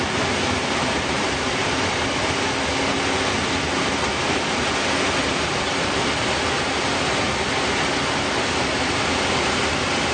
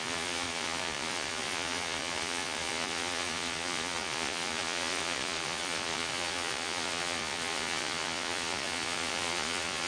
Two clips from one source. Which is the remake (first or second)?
second